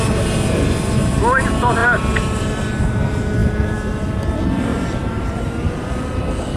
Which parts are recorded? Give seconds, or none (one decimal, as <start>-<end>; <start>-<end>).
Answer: 0.0-4.7; 5.3-6.6